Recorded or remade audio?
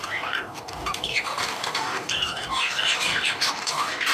remade